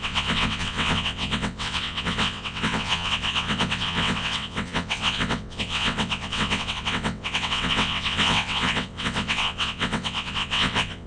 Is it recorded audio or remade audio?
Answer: remade